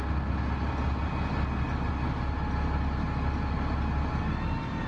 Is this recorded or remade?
recorded